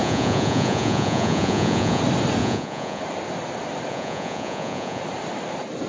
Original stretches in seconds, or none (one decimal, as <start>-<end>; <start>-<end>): 2.0-2.4; 3.0-3.9; 5.0-5.9